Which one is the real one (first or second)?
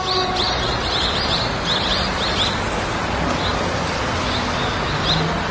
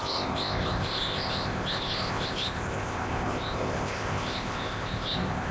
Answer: first